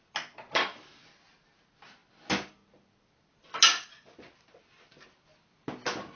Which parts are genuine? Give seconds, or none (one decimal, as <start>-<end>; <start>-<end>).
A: 0.0-6.2